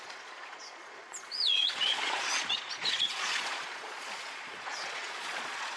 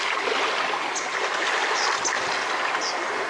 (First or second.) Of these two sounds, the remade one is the first